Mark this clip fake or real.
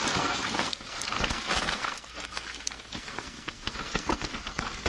fake